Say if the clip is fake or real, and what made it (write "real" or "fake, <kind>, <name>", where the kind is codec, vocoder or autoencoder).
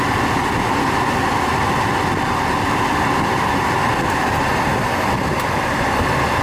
real